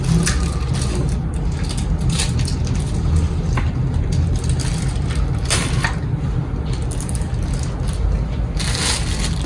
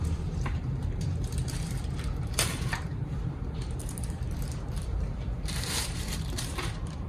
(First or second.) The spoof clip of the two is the second